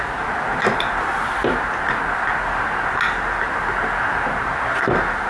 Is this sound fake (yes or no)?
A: no